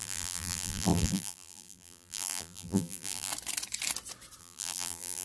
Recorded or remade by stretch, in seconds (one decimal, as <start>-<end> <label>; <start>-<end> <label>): 0.0-3.3 remade; 3.3-4.4 recorded; 4.4-5.2 remade